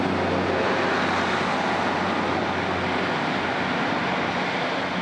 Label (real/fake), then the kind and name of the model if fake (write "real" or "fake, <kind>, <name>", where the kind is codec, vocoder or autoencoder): real